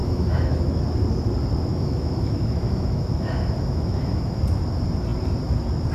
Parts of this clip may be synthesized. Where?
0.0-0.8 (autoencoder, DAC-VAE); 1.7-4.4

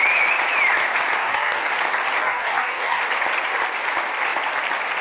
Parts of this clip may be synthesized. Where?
1.2-1.7 (codec, DAC); 2.2-3.0

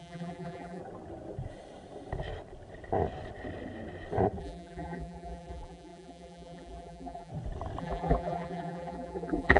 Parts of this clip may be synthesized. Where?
0.0-0.8 (vocoder, BigVGAN v2); 4.4-7.3; 7.8-9.6

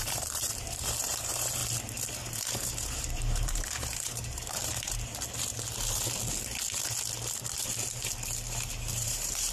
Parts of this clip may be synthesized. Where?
0.0-1.6 (vocoder, BigVGAN v2); 2.4-5.1; 8.7-9.5

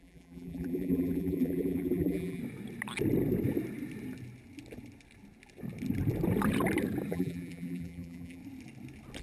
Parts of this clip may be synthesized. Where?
0.0-2.4 (vocoder, BigVGAN v2); 7.1-8.4

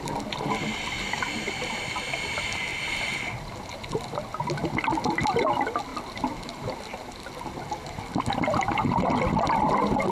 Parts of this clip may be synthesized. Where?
none

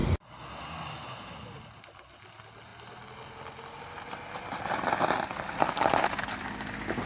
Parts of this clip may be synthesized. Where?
none